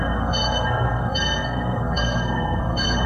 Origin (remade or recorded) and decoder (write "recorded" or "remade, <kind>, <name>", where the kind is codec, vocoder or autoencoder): remade, codec, SNAC